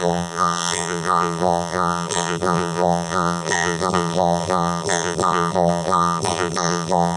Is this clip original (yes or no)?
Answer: no